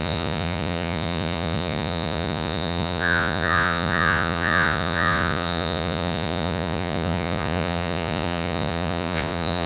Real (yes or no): no